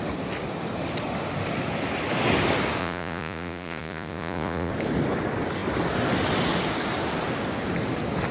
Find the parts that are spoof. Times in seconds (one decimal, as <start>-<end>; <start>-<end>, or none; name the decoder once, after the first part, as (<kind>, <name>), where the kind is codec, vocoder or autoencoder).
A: 2.8-4.7 (vocoder, Vocos)